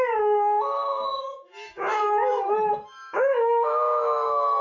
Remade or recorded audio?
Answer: remade